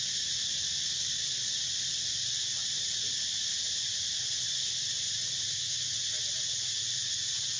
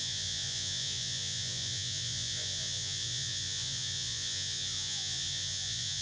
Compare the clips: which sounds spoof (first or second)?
second